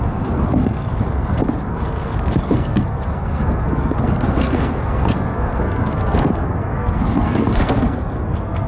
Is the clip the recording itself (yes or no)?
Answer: no